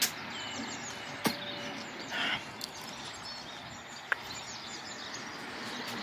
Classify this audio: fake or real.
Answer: real